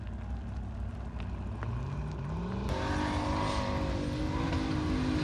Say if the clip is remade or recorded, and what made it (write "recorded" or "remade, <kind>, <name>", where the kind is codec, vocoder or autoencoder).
recorded